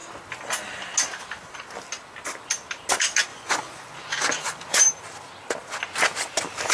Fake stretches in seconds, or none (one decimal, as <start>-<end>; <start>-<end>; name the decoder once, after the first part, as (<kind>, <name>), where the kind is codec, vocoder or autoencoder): 3.3-4.8 (vocoder, Vocos)